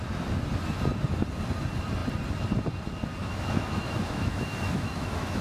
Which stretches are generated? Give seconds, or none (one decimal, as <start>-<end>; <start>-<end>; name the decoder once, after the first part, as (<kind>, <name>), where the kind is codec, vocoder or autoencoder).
3.2-5.4 (autoencoder, DAC-VAE)